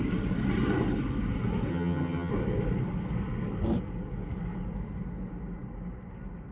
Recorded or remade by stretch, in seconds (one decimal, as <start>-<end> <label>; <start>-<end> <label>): 0.0-1.7 recorded; 1.7-2.3 remade; 2.3-6.5 recorded